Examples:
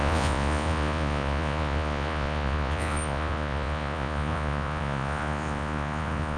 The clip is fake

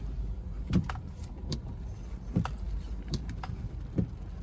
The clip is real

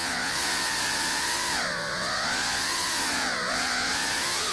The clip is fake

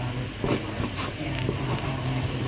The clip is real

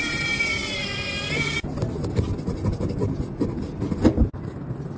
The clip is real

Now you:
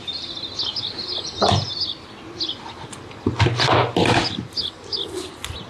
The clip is real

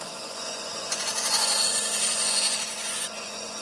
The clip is fake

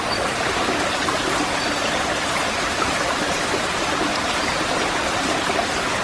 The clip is real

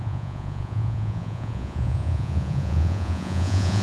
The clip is fake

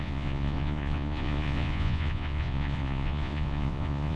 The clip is fake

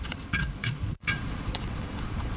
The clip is fake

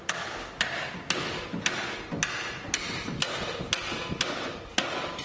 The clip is real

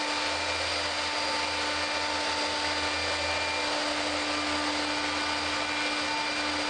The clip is real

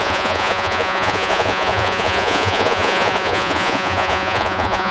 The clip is fake